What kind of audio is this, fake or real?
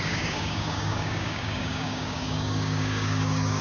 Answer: fake